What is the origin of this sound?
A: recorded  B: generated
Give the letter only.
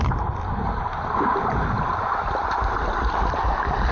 A